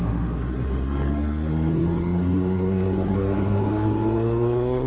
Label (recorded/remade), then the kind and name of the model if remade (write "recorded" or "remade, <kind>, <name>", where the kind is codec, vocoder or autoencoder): remade, codec, SNAC